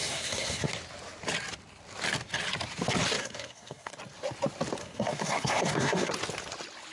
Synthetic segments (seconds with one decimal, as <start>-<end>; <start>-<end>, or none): 0.0-0.7; 3.2-3.9; 4.8-6.1